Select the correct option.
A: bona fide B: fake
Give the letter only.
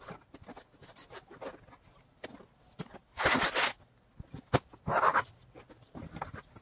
A